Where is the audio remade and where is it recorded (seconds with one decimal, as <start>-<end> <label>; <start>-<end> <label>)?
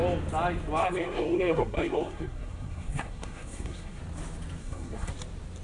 0.0-0.8 recorded; 0.8-4.0 remade; 4.0-4.6 recorded; 4.6-5.1 remade; 5.1-5.6 recorded